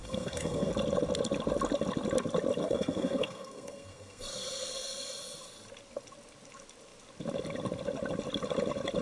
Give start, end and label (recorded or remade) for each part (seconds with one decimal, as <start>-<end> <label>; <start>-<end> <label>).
0.0-0.7 remade; 0.7-2.6 recorded; 2.6-5.1 remade; 5.1-9.0 recorded